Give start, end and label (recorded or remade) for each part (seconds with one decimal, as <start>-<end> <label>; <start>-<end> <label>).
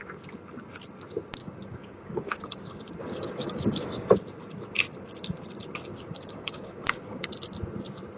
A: 0.0-1.4 recorded; 1.4-2.5 remade; 2.5-3.0 recorded; 3.0-4.1 remade; 4.1-5.9 recorded; 5.9-7.3 remade; 7.3-8.2 recorded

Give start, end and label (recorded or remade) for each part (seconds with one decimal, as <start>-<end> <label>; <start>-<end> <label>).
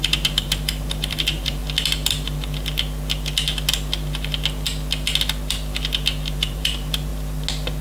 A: 0.0-1.6 remade; 1.6-6.3 recorded; 6.3-7.1 remade; 7.1-7.8 recorded